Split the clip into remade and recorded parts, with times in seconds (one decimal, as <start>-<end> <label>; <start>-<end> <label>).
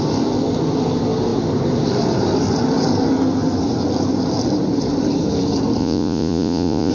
0.0-5.8 recorded; 5.8-6.9 remade